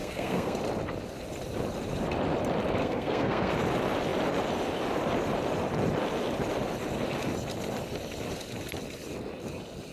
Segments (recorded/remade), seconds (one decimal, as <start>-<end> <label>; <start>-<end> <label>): 0.0-0.6 remade; 0.6-2.8 recorded; 2.8-3.5 remade; 3.5-9.9 recorded